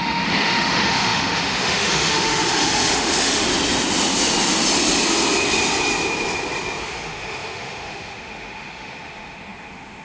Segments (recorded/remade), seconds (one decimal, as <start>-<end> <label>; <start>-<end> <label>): 0.0-3.5 remade; 3.5-6.8 recorded; 6.8-10.0 remade